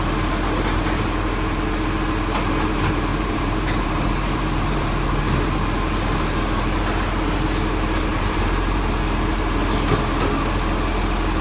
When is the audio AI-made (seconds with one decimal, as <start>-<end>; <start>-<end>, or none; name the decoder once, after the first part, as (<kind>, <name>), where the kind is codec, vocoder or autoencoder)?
3.1-5.2 (vocoder, BigVGAN v2); 8.1-8.8